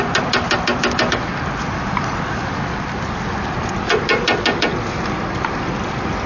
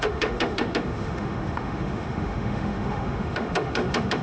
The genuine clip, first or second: first